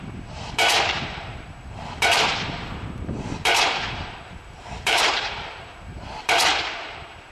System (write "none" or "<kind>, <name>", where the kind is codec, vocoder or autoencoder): vocoder, BigVGAN v2